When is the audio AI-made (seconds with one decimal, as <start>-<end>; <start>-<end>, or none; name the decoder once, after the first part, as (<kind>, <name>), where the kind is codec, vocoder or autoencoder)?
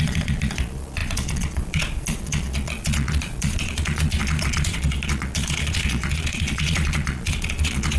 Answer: 0.0-8.0 (vocoder, Vocos)